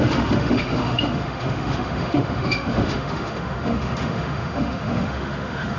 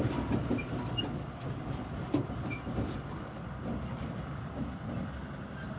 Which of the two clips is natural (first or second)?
second